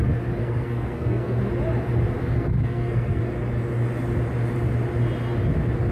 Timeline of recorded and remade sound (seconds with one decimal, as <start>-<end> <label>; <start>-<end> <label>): 0.0-0.4 recorded; 0.4-1.4 remade; 1.4-2.2 recorded; 2.2-3.2 remade; 3.2-5.9 recorded